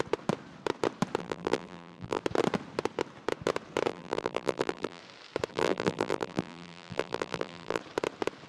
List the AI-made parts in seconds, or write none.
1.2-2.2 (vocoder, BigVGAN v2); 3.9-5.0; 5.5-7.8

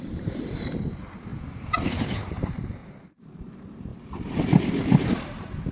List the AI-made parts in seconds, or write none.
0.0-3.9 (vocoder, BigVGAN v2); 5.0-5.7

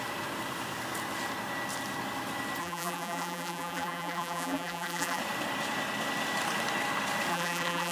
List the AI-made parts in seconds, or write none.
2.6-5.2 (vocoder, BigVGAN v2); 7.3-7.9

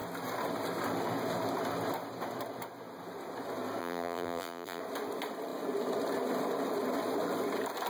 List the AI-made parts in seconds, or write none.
3.8-4.8 (vocoder, BigVGAN v2)